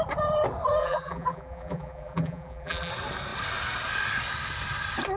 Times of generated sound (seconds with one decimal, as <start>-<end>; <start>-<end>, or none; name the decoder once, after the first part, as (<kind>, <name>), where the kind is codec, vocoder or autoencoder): 0.8-2.9 (vocoder, BigVGAN v2)